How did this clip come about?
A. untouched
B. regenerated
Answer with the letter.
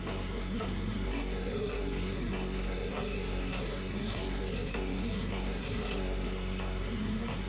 B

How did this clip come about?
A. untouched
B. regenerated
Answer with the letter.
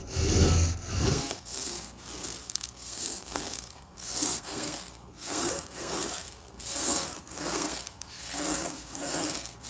B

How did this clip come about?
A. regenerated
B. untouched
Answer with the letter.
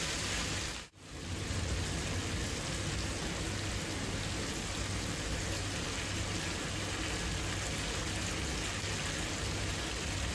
B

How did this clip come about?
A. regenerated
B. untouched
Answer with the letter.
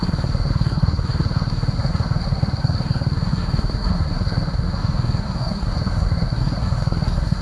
A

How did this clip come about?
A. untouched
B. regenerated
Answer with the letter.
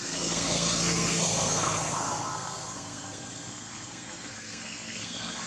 B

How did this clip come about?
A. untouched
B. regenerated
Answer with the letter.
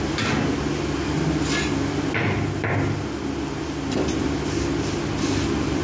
A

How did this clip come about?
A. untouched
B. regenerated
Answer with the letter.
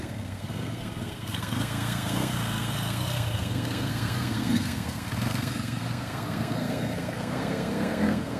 B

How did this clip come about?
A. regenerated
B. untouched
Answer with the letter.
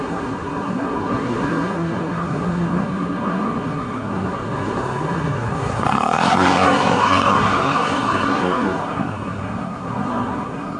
A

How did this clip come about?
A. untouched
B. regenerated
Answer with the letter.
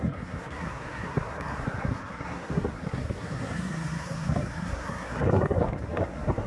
B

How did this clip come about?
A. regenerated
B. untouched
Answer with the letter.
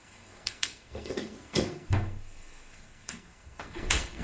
A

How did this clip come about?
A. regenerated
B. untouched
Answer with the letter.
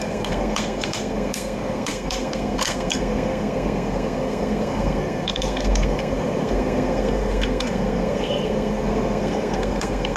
A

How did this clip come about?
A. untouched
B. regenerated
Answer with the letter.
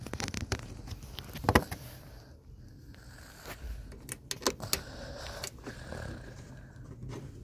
A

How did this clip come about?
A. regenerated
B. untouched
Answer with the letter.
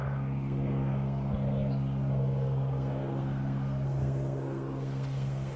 A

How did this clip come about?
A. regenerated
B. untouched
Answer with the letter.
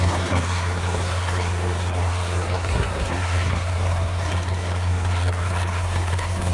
A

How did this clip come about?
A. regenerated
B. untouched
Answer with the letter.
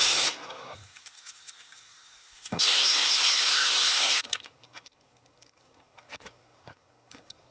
A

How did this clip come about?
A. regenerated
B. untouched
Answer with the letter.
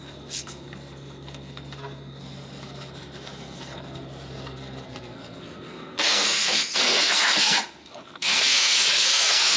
A